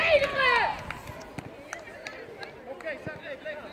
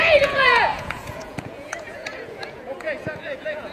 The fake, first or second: second